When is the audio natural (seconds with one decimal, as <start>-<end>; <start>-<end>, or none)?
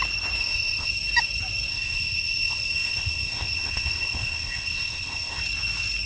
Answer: 0.0-0.4; 0.9-1.7; 5.4-6.1